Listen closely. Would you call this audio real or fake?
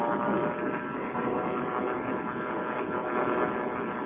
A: real